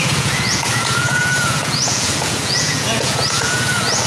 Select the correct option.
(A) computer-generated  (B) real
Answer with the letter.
A